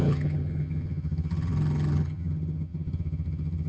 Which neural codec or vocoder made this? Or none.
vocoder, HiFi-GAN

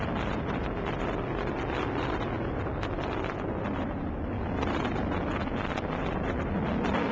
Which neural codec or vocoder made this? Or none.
none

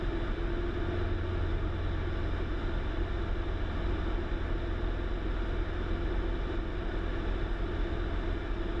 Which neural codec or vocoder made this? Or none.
none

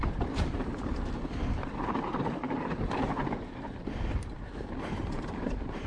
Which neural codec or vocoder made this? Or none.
vocoder, BigVGAN v2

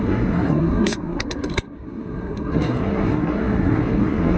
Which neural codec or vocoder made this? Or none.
codec, SNAC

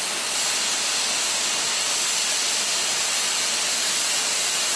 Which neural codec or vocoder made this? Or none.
none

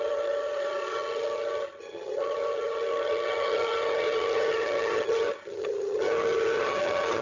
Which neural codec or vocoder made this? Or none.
vocoder, HiFi-GAN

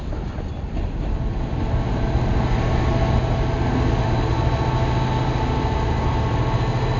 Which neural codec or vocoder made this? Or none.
none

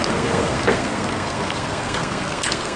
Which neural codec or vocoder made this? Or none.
codec, SNAC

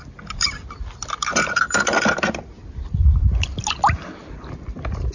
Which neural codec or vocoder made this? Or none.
none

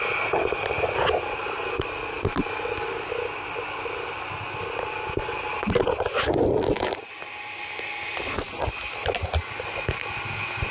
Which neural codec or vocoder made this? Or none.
none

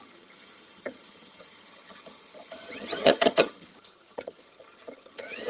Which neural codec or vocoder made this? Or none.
vocoder, HiFi-GAN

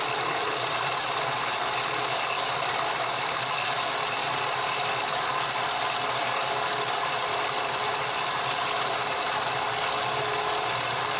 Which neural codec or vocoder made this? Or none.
none